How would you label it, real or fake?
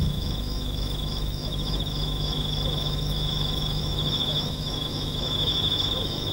fake